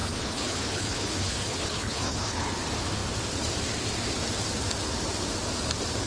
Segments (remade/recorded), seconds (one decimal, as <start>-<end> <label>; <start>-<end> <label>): 0.0-2.5 remade; 2.5-6.1 recorded